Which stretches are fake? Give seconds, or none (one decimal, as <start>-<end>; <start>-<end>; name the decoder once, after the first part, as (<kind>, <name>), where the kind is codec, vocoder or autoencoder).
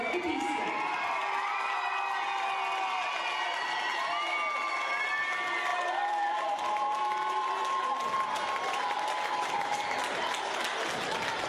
5.7-10.8 (vocoder, BigVGAN v2)